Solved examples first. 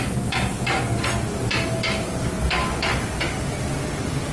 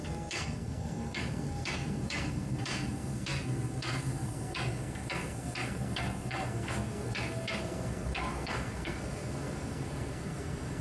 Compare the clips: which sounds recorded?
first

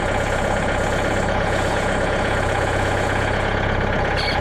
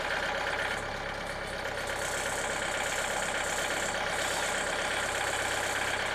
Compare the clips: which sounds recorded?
second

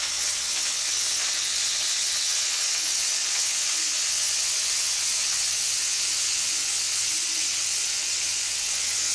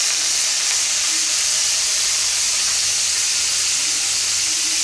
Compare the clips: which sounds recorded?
second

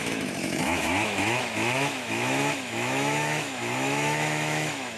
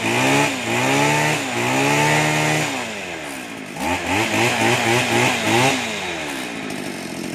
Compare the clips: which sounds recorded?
second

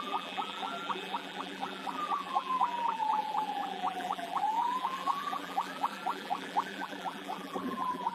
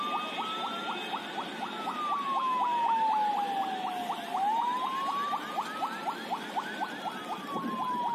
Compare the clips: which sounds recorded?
second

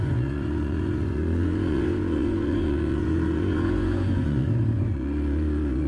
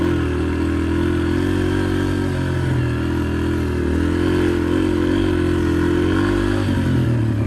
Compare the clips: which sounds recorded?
second